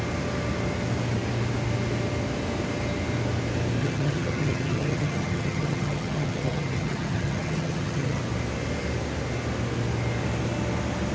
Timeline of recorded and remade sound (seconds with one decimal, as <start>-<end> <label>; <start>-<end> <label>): 0.0-3.8 recorded; 3.8-8.2 remade; 8.2-11.1 recorded